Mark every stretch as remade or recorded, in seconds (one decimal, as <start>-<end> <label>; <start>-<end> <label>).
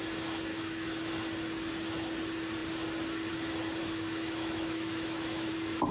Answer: 0.0-0.5 recorded; 0.5-1.1 remade; 1.1-3.8 recorded; 3.8-5.5 remade; 5.5-5.9 recorded